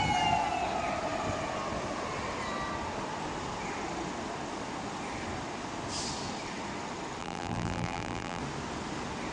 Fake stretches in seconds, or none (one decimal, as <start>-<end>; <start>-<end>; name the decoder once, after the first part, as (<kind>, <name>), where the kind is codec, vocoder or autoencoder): 7.2-8.4 (vocoder, BigVGAN v2)